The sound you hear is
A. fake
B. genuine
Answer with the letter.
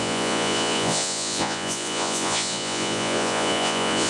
A